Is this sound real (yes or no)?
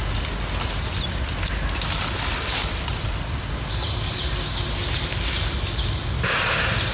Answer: yes